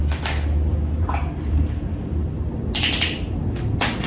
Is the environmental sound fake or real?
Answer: real